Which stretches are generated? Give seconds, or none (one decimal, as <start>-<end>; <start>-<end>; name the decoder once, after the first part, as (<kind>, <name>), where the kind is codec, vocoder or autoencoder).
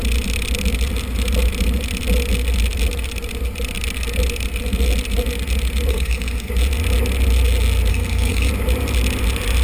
5.9-6.5 (codec, SNAC); 7.9-8.5